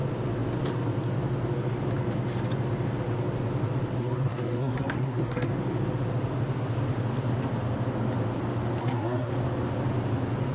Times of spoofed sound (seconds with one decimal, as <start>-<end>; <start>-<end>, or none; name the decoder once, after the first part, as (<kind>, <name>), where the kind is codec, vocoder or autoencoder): 4.0-5.5 (codec, SNAC); 8.8-9.3